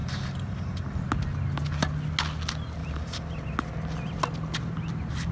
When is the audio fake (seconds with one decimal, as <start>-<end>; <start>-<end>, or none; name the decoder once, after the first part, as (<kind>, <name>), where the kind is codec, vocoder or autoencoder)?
0.0-1.0 (vocoder, BigVGAN v2); 2.8-3.3